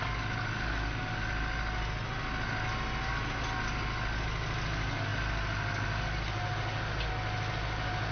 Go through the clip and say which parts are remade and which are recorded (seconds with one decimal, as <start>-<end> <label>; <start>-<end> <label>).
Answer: 0.0-8.1 recorded

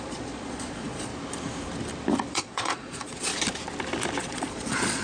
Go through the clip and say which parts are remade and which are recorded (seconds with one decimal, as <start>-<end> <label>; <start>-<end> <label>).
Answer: 0.0-1.1 remade; 1.1-2.3 recorded; 2.3-3.3 remade; 3.3-4.2 recorded; 4.2-5.0 remade

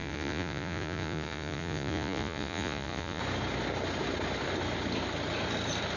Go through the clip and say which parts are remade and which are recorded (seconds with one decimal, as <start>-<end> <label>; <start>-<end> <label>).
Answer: 0.0-3.2 remade; 3.2-6.0 recorded

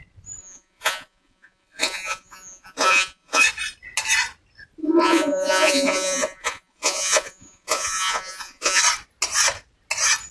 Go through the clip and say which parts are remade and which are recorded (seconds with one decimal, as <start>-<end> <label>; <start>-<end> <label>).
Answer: 0.0-0.4 recorded; 0.4-3.4 remade; 3.4-4.8 recorded; 4.8-8.8 remade; 8.8-10.3 recorded

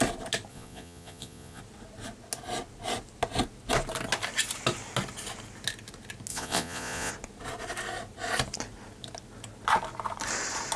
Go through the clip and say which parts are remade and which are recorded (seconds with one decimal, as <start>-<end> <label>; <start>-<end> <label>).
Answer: 0.0-0.5 recorded; 0.5-1.6 remade; 1.6-6.3 recorded; 6.3-7.1 remade; 7.1-10.8 recorded